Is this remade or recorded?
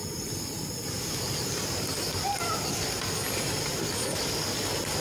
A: recorded